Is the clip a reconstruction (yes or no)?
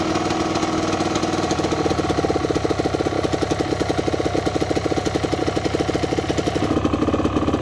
no